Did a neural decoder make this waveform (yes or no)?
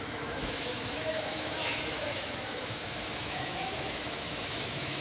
yes